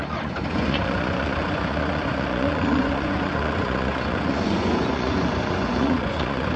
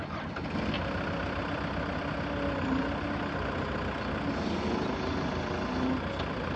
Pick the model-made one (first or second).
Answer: first